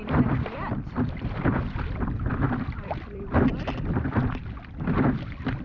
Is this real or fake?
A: fake